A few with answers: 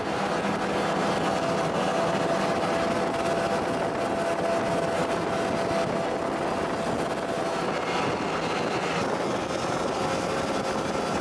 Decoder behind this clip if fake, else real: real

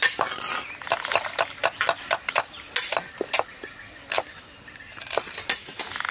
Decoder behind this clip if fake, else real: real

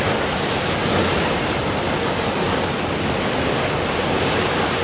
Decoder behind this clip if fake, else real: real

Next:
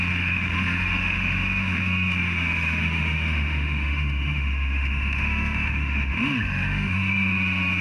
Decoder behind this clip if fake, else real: fake, autoencoder, DAC-VAE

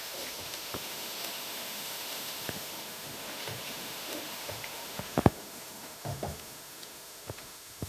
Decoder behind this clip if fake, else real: fake, autoencoder, DAC-VAE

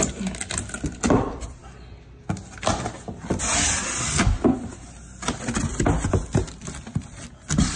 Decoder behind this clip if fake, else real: real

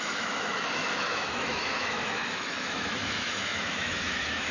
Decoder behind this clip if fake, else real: fake, autoencoder, DAC-VAE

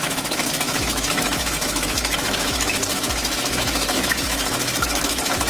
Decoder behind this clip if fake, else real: fake, autoencoder, DAC-VAE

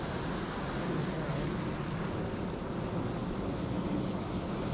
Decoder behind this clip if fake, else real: real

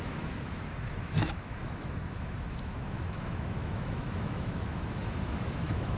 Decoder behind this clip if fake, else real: fake, autoencoder, DAC-VAE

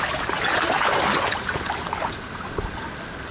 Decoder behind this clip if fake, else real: real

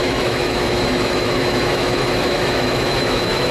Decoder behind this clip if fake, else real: fake, autoencoder, DAC-VAE